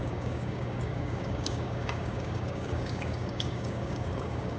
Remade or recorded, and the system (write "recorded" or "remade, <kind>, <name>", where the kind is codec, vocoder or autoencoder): remade, codec, DAC